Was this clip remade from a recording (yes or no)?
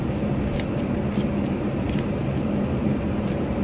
no